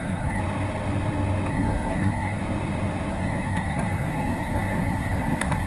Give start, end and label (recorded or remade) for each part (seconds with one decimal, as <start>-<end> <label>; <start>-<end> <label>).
0.0-0.4 remade; 0.4-1.5 recorded; 1.5-2.4 remade; 2.4-3.1 recorded; 3.1-5.7 remade